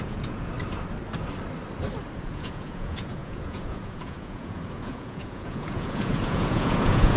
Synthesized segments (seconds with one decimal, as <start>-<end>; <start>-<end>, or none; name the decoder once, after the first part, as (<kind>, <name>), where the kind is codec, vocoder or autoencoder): 0.0-0.5 (vocoder, Vocos); 2.2-7.2

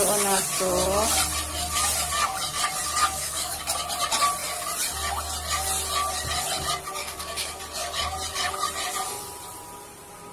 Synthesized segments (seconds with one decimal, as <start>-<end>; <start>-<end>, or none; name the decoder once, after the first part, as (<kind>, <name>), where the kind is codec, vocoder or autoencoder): 3.0-3.6 (codec, DAC); 7.0-7.6

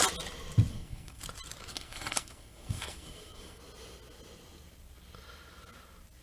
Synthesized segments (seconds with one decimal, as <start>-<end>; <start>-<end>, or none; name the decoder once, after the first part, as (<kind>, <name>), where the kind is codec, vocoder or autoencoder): 0.7-1.2 (codec, SNAC); 1.7-3.6